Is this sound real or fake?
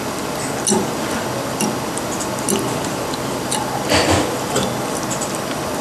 real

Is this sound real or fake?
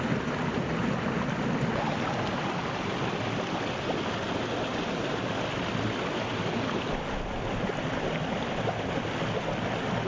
real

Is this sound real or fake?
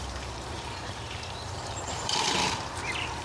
fake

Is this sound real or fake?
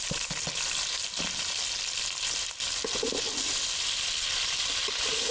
real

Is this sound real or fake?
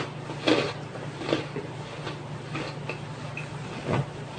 real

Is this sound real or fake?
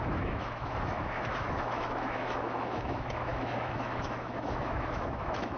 fake